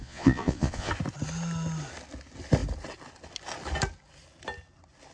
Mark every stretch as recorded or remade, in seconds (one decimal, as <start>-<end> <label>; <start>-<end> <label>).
0.0-0.9 remade; 0.9-5.1 recorded